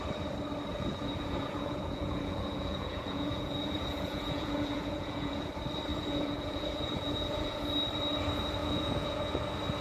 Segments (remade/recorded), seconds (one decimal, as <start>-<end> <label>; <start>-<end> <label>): 0.0-0.7 recorded; 0.7-5.5 remade; 5.5-5.9 recorded; 5.9-7.7 remade; 7.7-8.6 recorded; 8.6-9.4 remade; 9.4-9.8 recorded